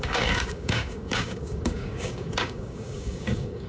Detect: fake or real fake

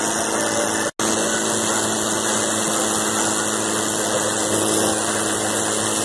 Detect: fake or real real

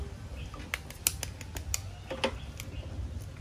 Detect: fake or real real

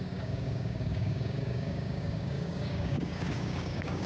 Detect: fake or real fake